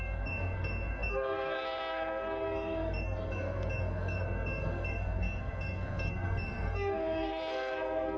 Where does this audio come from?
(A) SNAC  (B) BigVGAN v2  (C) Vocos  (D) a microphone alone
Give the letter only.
A